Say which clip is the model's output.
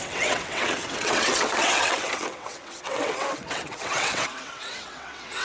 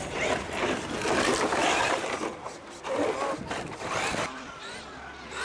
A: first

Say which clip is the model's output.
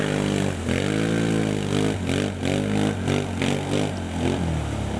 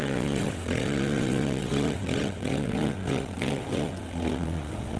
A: second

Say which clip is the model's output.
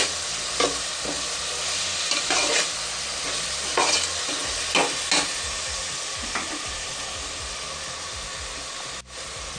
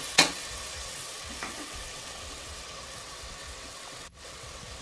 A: second